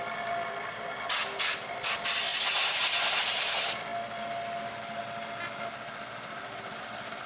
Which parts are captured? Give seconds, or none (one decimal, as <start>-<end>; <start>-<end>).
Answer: 0.0-7.3